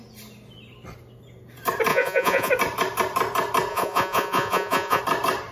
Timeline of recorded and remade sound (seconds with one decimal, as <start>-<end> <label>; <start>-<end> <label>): 0.0-1.9 recorded; 1.9-2.5 remade; 2.5-3.7 recorded; 3.7-5.0 remade; 5.0-5.5 recorded